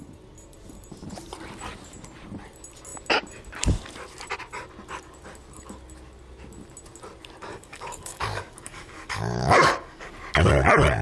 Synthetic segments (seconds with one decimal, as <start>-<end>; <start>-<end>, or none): 7.5-10.1